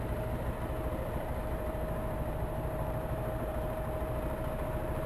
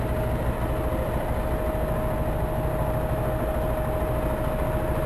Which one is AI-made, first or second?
first